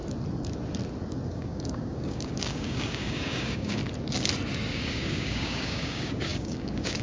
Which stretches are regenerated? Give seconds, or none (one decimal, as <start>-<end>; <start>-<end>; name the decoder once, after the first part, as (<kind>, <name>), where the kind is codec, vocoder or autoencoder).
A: 1.3-3.8 (codec, DAC); 4.7-7.0